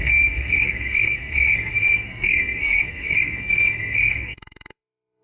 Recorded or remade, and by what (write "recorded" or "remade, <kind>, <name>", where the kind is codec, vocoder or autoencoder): remade, codec, SNAC